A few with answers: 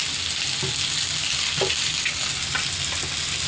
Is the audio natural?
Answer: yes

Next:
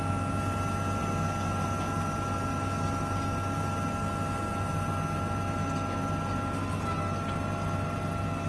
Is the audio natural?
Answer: yes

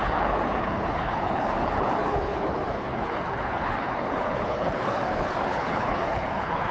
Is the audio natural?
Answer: no